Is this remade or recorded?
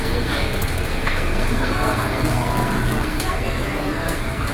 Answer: remade